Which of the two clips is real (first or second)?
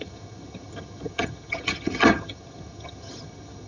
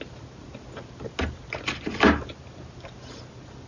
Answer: second